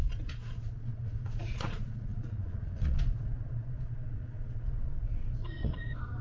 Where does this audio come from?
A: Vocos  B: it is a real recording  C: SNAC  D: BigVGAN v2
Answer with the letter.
A